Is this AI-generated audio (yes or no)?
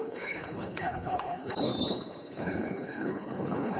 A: yes